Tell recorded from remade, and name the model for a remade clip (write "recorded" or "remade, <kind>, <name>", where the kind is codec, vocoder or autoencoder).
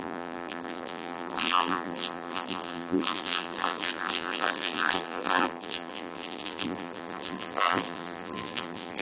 remade, vocoder, BigVGAN v2